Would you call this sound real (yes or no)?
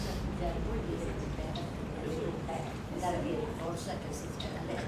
no